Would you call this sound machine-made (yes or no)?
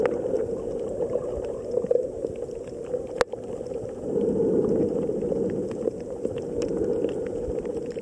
no